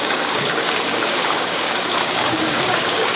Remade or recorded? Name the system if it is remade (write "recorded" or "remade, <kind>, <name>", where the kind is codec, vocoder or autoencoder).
remade, codec, DAC